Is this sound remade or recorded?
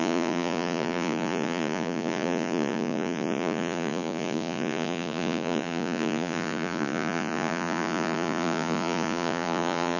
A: remade